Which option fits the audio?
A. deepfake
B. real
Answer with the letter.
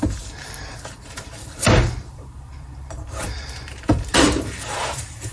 A